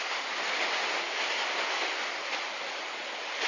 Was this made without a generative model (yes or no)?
yes